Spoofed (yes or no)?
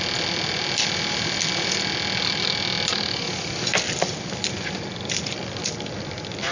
no